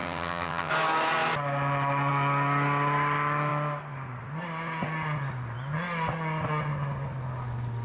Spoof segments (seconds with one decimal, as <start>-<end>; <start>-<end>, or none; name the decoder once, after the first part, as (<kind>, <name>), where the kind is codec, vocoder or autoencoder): 0.0-0.7 (vocoder, HiFi-GAN)

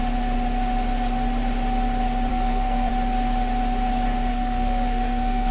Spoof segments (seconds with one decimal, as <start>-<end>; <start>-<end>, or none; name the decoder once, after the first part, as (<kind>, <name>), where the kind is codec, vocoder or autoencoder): 2.3-2.9 (codec, SNAC); 4.3-5.5

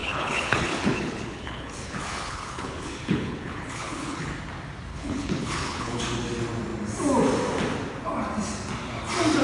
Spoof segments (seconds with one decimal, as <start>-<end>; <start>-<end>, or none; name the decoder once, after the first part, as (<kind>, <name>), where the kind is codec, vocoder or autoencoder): 0.0-4.3 (codec, HILCodec); 4.9-6.0